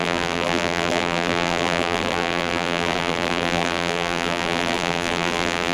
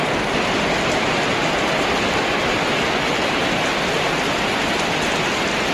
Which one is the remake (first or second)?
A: first